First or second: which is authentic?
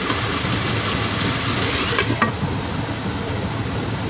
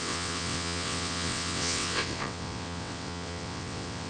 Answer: first